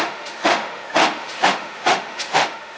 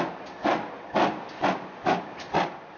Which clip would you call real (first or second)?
second